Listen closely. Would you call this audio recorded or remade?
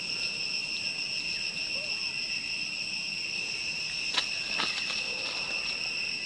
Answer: recorded